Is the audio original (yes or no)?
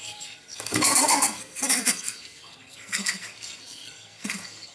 no